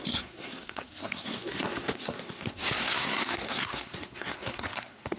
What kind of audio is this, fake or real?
fake